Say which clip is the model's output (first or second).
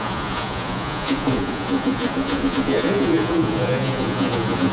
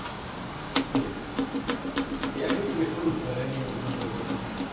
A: first